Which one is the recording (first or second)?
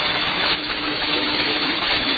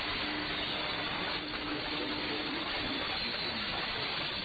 second